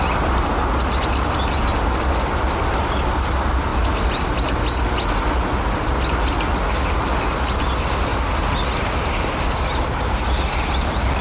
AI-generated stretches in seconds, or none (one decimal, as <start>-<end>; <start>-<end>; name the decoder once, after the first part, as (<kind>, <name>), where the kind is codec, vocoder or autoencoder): 8.1-9.4 (vocoder, BigVGAN v2)